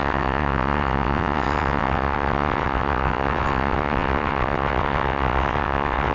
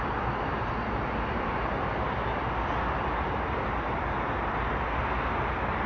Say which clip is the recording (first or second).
second